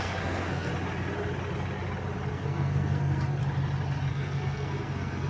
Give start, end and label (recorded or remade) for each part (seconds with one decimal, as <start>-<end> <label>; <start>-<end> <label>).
0.0-0.7 remade; 0.7-2.3 recorded; 2.3-3.4 remade; 3.4-4.1 recorded; 4.1-5.3 remade